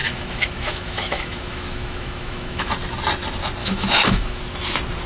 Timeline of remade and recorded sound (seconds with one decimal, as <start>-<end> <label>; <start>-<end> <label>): 0.0-2.7 remade; 2.7-3.6 recorded; 3.6-4.4 remade; 4.4-5.1 recorded